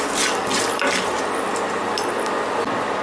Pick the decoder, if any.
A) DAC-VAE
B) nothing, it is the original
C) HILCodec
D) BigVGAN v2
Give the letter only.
B